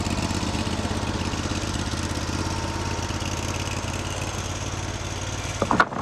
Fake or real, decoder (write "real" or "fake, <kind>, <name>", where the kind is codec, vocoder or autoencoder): real